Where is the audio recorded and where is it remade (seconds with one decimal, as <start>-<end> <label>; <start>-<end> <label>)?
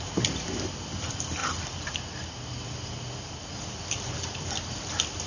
0.0-5.3 recorded